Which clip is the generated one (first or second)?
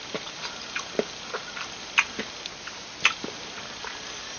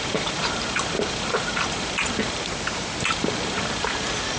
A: second